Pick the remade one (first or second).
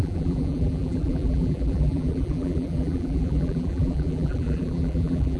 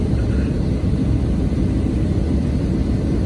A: first